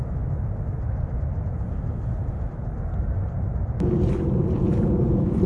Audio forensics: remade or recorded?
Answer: recorded